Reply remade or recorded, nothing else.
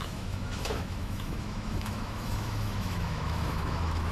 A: remade